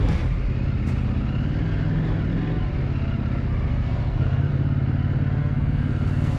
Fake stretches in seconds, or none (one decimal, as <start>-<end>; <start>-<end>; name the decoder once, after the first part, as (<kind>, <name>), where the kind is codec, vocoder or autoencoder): 3.7-4.5 (codec, SNAC); 5.4-6.4